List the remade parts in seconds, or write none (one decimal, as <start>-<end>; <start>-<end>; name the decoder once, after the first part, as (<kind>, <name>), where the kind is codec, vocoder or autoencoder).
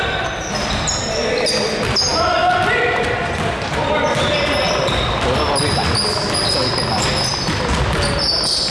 none